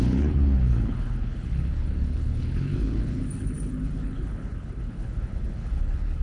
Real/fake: fake